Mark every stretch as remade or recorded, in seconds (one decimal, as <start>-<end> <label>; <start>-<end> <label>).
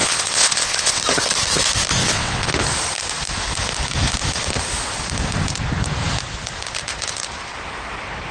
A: 0.0-1.0 remade; 1.0-2.0 recorded; 2.0-2.5 remade; 2.5-8.3 recorded